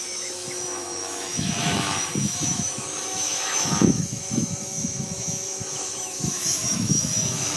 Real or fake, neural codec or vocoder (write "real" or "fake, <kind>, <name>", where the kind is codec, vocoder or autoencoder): fake, autoencoder, DAC-VAE